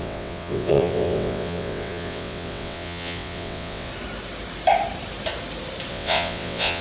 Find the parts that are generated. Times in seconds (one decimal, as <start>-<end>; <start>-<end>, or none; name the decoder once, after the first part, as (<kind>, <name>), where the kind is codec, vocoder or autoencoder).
0.0-3.9 (vocoder, WaveNeXt); 5.9-6.8